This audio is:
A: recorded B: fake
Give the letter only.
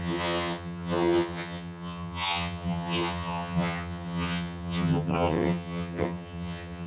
B